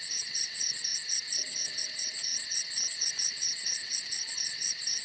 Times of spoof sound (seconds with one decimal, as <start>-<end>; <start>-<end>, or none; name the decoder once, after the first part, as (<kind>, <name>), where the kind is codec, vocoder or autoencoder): 0.0-5.0 (vocoder, WaveNeXt)